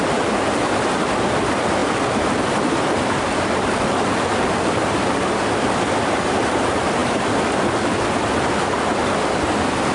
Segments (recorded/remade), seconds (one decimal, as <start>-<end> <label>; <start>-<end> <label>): 0.0-9.9 remade